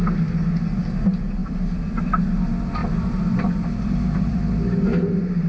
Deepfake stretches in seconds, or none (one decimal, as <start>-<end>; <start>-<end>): 1.4-2.4; 2.8-4.4